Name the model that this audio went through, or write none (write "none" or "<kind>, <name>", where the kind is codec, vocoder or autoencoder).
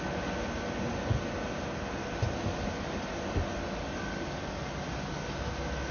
none